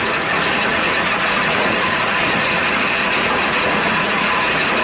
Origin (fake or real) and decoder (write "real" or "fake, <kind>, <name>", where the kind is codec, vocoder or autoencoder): fake, vocoder, Vocos